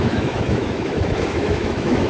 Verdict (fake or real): fake